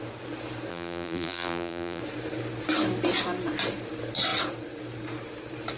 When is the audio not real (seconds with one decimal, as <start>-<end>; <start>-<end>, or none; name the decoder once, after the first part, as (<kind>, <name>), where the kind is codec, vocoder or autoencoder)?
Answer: 0.7-2.0 (vocoder, BigVGAN v2)